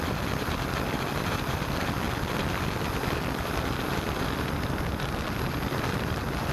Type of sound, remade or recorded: recorded